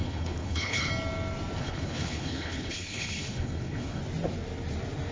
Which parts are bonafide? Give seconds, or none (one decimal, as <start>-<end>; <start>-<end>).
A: 0.9-1.6; 4.0-5.1